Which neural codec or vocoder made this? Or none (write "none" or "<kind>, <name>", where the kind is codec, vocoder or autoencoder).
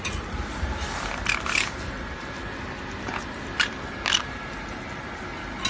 none